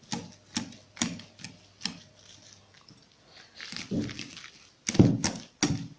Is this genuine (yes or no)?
yes